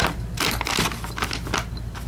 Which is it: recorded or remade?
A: recorded